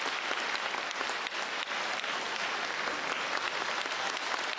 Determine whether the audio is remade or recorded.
recorded